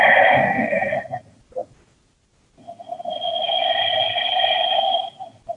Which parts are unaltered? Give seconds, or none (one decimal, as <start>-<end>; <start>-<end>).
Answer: 0.0-0.4; 1.2-5.6